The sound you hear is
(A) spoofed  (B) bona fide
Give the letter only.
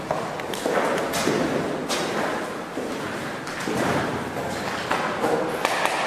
B